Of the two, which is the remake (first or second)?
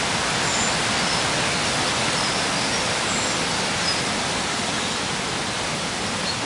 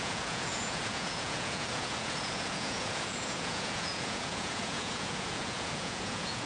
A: second